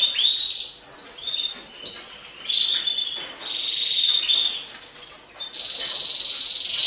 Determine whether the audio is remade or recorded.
recorded